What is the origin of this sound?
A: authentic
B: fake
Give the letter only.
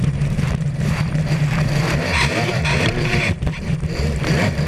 B